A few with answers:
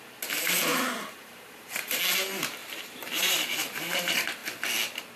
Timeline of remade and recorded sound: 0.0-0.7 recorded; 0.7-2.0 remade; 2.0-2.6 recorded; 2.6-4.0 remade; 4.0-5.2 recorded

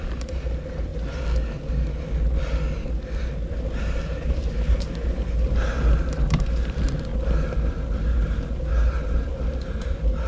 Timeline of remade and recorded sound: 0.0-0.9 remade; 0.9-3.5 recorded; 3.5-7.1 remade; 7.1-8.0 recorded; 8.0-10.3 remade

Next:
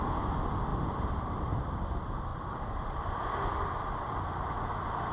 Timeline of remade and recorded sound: 0.0-0.7 recorded; 0.7-1.7 remade; 1.7-2.3 recorded; 2.3-3.0 remade; 3.0-5.1 recorded